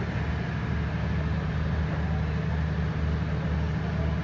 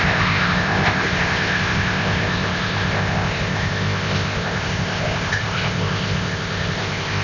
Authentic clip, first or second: first